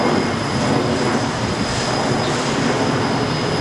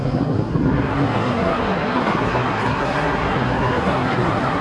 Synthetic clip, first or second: second